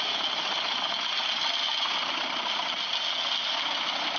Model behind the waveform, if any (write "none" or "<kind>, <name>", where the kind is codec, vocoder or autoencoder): none